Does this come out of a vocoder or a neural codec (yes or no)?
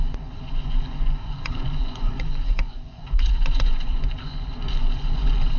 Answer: yes